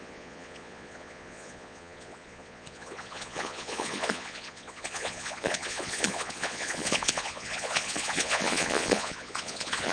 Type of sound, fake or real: fake